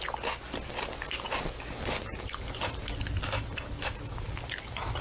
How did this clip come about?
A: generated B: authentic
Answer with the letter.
B